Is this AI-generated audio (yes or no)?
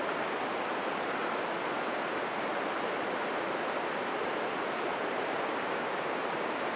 no